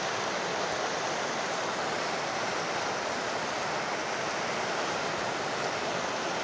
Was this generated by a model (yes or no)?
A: no